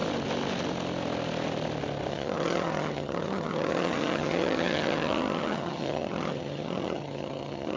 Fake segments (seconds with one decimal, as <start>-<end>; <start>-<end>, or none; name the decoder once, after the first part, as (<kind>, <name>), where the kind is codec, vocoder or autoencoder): 2.1-7.8 (vocoder, HiFi-GAN)